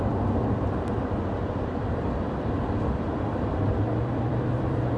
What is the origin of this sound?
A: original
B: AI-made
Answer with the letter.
B